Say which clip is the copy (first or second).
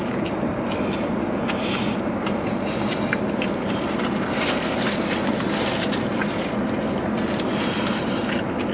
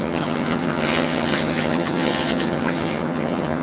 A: second